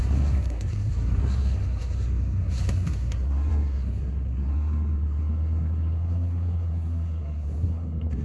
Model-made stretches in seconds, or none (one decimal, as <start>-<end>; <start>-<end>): 0.0-8.2